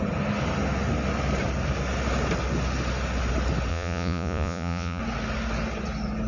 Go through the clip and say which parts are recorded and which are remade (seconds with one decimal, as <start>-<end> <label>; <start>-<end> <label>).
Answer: 0.0-3.7 recorded; 3.7-5.0 remade; 5.0-6.3 recorded